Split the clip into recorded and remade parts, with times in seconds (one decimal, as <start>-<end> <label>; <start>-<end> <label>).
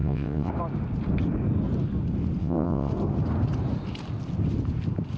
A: 0.0-0.5 remade; 0.5-2.4 recorded; 2.4-2.9 remade; 2.9-5.2 recorded